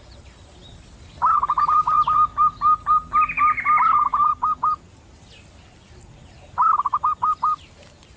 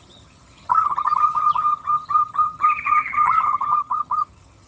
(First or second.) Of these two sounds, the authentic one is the first